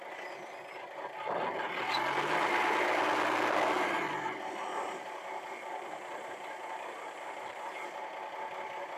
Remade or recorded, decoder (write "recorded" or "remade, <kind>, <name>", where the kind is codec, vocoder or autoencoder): recorded